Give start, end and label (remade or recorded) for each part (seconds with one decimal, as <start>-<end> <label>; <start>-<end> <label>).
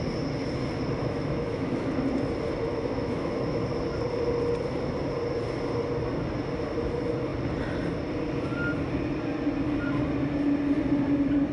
0.0-1.0 recorded; 1.0-1.9 remade; 1.9-2.7 recorded; 2.7-3.6 remade; 3.6-11.5 recorded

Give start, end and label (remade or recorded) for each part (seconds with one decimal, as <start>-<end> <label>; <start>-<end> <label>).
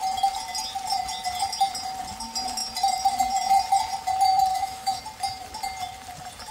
0.0-4.5 recorded; 4.5-5.0 remade; 5.0-6.5 recorded